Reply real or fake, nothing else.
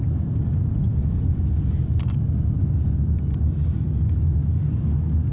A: real